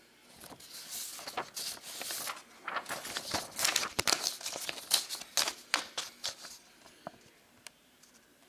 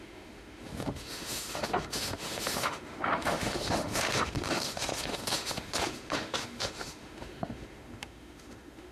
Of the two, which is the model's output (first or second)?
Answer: second